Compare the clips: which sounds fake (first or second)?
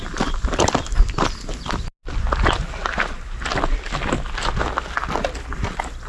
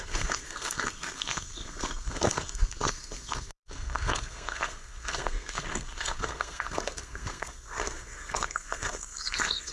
second